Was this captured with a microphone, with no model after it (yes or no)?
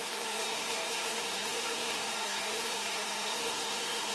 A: no